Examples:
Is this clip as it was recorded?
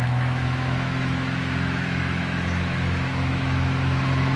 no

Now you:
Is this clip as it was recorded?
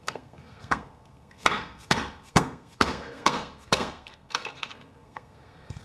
no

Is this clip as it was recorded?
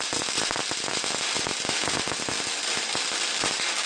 yes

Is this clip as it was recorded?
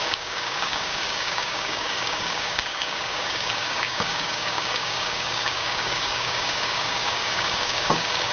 no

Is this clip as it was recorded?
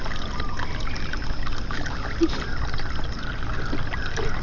yes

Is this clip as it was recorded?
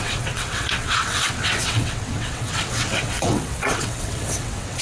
no